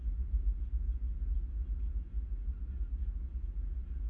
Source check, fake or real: real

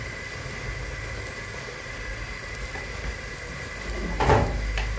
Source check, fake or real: real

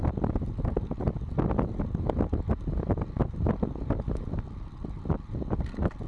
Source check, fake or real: real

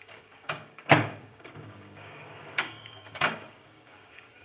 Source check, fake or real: fake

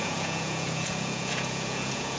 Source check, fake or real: fake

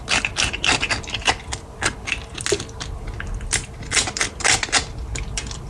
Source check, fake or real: real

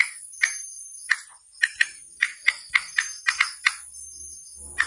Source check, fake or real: real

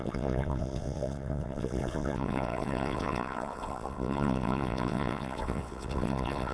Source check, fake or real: fake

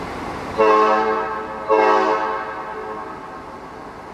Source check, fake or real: real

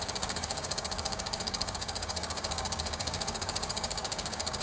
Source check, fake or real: fake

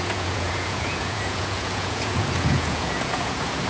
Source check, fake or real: fake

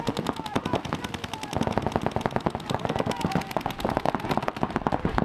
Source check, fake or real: real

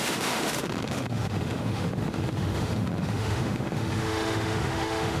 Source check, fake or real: fake